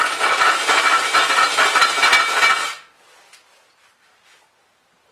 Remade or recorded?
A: recorded